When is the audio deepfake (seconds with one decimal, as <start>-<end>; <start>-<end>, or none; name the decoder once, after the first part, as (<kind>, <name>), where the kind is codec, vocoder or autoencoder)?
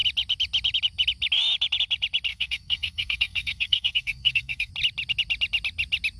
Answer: 2.3-4.7 (codec, SNAC)